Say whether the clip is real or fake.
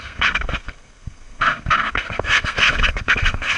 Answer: fake